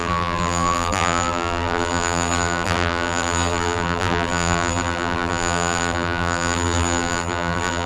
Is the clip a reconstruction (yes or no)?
yes